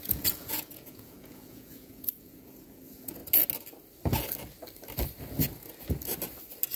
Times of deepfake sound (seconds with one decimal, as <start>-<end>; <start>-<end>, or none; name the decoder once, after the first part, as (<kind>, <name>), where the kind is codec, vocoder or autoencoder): 0.0-3.2 (vocoder, Vocos)